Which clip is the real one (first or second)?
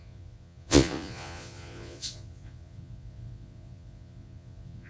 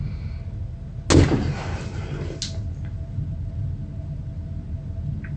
second